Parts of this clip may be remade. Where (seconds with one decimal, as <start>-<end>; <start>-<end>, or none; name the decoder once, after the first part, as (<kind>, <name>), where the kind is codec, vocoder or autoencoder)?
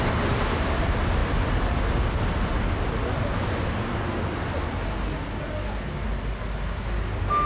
none